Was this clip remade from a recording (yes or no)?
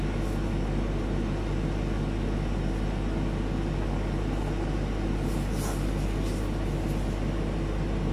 no